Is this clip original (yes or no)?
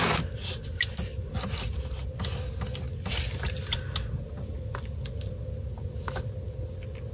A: yes